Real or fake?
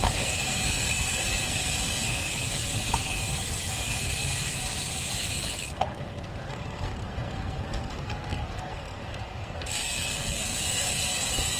fake